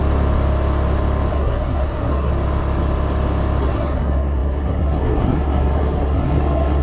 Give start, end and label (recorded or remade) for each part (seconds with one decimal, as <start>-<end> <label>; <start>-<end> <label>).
0.0-1.3 recorded; 1.3-2.3 remade; 2.3-3.6 recorded; 3.6-6.8 remade